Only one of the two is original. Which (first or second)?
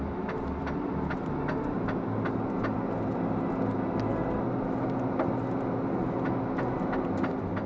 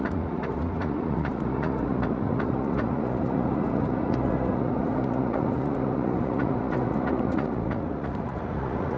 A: first